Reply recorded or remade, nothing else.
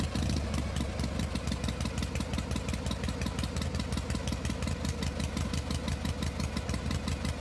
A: recorded